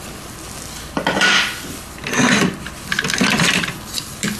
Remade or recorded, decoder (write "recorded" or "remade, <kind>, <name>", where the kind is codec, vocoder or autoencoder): recorded